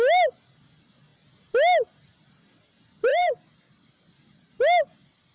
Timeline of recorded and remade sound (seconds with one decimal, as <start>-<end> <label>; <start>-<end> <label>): 0.0-3.1 recorded; 3.1-3.9 remade; 3.9-5.3 recorded